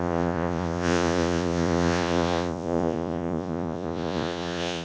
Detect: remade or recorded remade